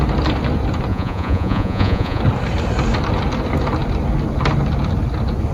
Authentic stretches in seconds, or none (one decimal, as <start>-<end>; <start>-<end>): 0.0-0.9; 2.2-5.5